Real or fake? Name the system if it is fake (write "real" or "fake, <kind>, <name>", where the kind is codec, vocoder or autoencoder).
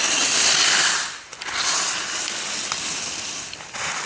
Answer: fake, vocoder, BigVGAN v2